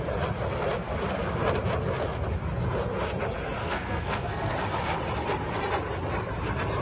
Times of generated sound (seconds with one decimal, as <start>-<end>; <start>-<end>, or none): 3.6-4.5